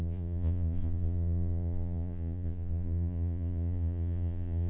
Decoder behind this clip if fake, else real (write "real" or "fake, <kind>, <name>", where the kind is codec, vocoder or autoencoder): fake, vocoder, Vocos